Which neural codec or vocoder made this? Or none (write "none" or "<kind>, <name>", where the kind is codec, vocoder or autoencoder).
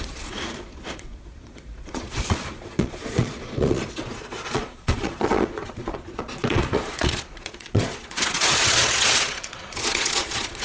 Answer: vocoder, Vocos